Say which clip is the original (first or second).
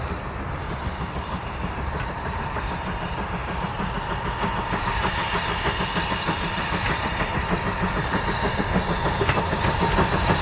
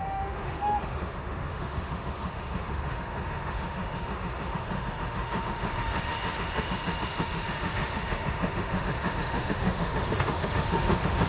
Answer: first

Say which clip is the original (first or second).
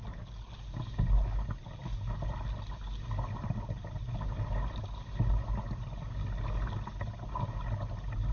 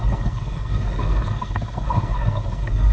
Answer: first